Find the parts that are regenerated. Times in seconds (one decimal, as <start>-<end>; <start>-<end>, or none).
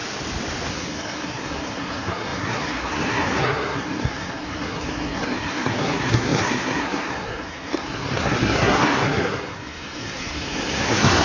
0.7-11.2